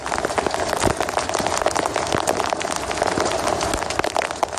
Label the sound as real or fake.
real